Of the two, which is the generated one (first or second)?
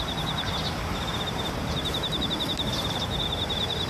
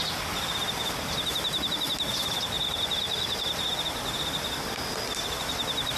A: first